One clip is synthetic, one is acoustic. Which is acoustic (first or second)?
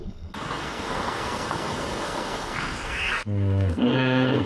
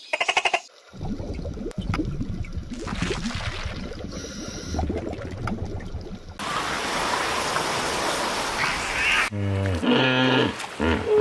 second